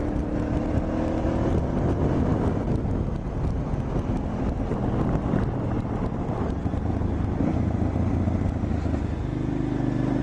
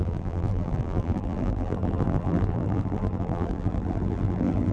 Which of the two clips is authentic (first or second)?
first